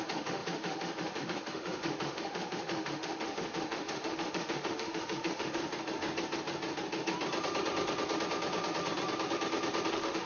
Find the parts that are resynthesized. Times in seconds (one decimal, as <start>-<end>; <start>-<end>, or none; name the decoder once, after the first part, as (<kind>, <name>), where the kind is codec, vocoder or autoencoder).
0.0-5.6 (autoencoder, DAC-VAE); 9.9-10.3